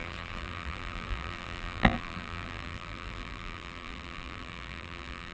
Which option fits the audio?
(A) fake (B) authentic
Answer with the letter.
A